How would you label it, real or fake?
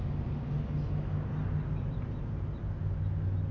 real